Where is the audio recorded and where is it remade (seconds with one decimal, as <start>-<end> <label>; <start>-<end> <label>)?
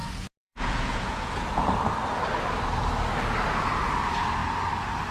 0.0-1.6 remade; 1.6-5.1 recorded